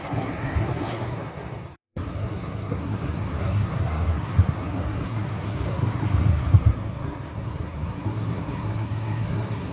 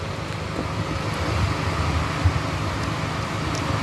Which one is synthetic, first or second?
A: first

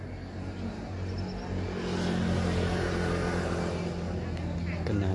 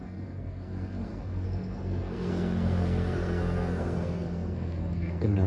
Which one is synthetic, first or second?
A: second